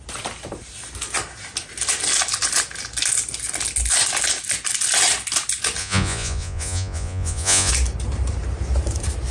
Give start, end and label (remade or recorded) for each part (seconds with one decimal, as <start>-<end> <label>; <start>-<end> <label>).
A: 0.0-5.8 recorded; 5.8-7.7 remade; 7.7-9.3 recorded